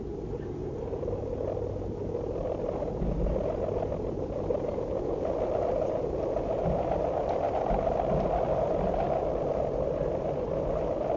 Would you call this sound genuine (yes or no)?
yes